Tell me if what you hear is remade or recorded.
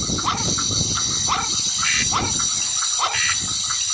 recorded